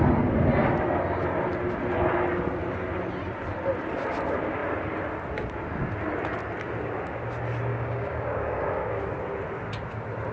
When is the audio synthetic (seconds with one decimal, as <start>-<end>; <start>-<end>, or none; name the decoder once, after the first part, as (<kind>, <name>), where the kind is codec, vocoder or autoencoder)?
7.7-9.0 (codec, DAC)

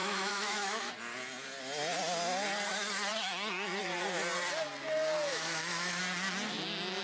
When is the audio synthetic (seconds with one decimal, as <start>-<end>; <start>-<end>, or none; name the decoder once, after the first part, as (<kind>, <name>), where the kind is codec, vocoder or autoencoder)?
0.0-0.9 (autoencoder, DAC-VAE); 5.3-6.0

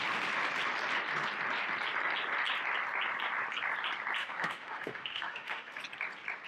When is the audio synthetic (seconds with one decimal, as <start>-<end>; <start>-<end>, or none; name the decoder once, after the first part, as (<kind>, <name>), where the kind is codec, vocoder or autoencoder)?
4.2-5.8 (autoencoder, DAC-VAE)

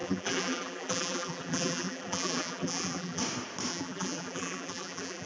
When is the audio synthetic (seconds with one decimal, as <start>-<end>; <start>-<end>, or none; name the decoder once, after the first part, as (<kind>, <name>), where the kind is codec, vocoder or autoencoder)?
0.0-3.2 (vocoder, BigVGAN v2); 3.7-5.3